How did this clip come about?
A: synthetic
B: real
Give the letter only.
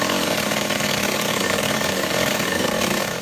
A